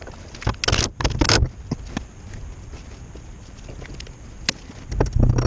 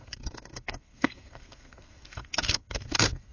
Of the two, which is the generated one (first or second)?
second